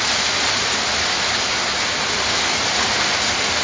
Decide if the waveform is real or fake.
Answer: real